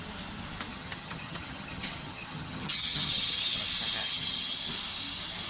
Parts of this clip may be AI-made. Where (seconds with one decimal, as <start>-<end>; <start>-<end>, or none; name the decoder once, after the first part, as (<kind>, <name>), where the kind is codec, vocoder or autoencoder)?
0.7-3.6 (vocoder, HiFi-GAN); 4.0-4.6